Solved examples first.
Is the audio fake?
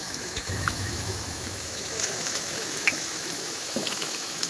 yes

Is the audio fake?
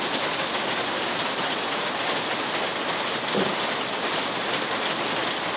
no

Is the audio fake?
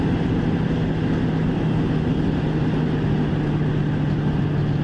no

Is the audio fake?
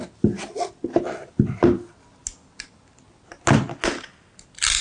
no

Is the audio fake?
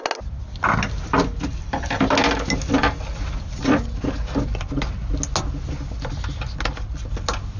no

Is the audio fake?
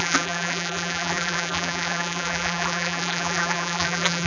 yes